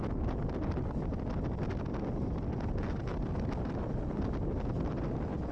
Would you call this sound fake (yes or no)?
no